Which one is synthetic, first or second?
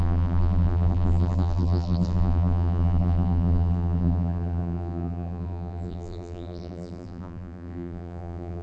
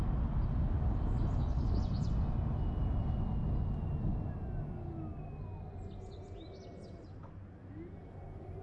first